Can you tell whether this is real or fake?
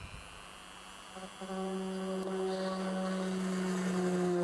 real